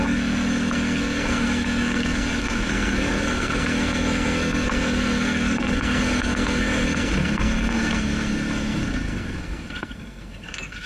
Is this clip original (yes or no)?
no